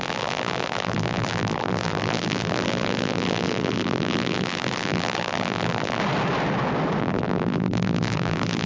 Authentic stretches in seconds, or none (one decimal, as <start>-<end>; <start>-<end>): 6.0-7.0